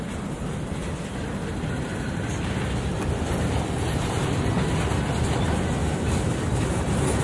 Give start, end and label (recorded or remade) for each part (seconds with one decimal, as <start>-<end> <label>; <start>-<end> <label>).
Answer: 0.0-7.2 recorded